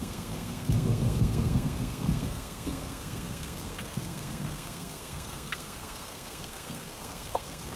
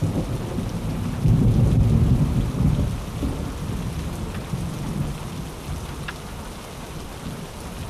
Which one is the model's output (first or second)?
first